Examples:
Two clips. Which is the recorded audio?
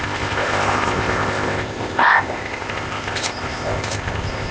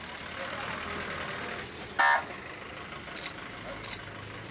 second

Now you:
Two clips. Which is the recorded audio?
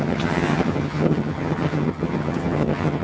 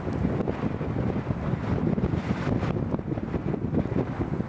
second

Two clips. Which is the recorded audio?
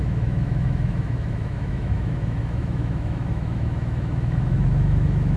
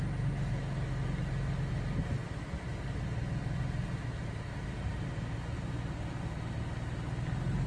second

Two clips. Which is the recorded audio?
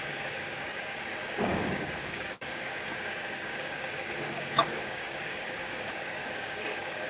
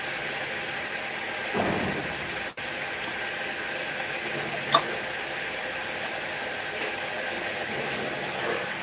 second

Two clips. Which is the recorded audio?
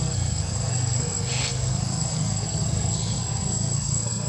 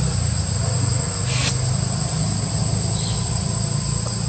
second